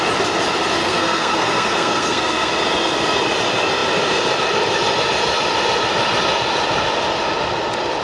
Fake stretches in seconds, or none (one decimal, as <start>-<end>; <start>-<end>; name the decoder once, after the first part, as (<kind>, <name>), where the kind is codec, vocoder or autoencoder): 0.8-2.5 (codec, SNAC)